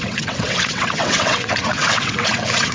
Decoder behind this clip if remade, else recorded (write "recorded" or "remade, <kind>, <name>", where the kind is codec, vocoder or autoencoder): remade, vocoder, WaveNeXt